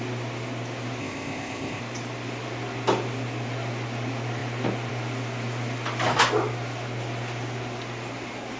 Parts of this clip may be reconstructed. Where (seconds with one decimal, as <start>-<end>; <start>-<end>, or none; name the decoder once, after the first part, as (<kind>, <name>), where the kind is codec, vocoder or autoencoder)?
1.0-1.8 (codec, ZipCodec)